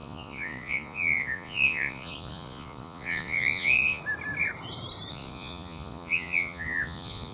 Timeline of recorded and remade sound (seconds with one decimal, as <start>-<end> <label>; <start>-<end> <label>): 0.0-4.0 remade; 4.0-5.1 recorded; 5.1-7.3 remade